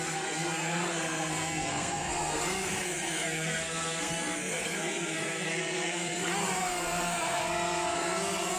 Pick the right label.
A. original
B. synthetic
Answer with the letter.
B